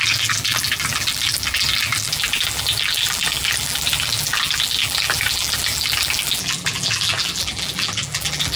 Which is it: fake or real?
fake